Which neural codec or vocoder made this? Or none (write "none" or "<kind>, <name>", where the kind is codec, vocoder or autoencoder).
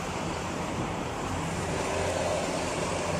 vocoder, BigVGAN v2